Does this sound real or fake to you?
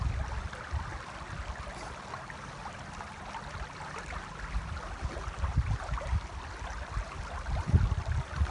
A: real